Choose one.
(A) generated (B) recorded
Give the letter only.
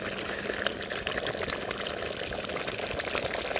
B